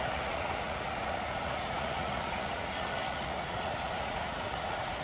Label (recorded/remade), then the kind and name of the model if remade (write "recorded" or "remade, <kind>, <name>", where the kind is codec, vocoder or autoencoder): remade, vocoder, Vocos